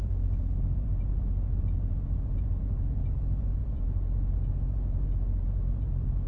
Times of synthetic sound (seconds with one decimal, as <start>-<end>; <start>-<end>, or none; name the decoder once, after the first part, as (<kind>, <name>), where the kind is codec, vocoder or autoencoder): 0.0-6.3 (vocoder, BigVGAN v2)